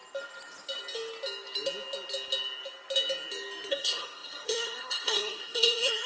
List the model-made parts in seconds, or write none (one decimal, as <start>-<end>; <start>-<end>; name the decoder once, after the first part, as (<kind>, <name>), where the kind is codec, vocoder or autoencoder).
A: 3.7-6.1 (codec, SNAC)